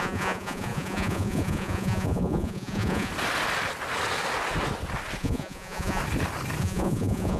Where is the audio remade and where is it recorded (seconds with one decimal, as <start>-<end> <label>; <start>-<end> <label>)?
0.0-3.1 remade; 3.1-5.2 recorded; 5.2-6.0 remade; 6.0-6.6 recorded; 6.6-7.4 remade